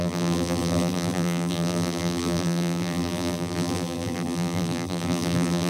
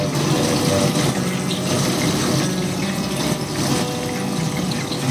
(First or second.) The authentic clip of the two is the second